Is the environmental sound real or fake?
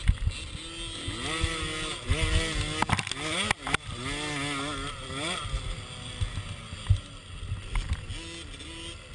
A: real